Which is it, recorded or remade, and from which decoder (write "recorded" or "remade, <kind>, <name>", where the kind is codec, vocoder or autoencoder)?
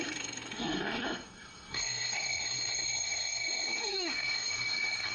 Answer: remade, codec, SNAC